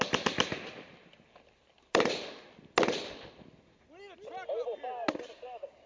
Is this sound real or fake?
real